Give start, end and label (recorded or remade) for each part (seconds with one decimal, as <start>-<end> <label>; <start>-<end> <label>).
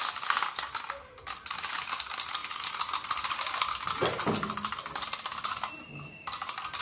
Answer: 0.0-6.8 recorded